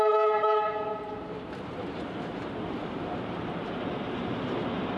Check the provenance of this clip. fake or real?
real